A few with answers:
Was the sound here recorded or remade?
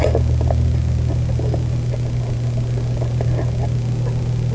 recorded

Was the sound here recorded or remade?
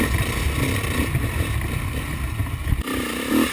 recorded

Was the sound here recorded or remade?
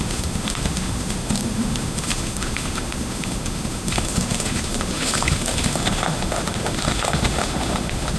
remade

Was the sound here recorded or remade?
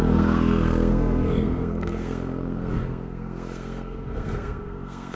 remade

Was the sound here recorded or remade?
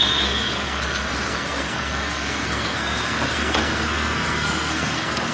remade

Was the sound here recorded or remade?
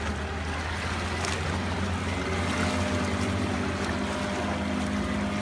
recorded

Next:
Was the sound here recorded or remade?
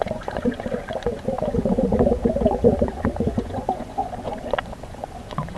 remade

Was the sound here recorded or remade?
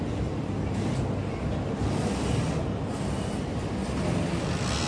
recorded